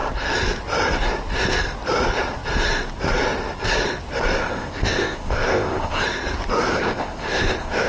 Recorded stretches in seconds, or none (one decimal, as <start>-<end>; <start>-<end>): 0.0-4.4; 6.0-6.7